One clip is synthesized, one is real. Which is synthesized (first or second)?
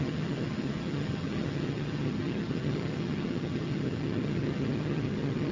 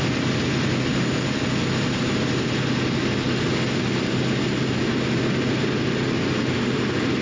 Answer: first